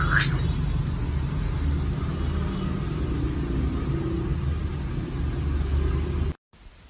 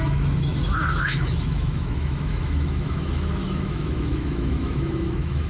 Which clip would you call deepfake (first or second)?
second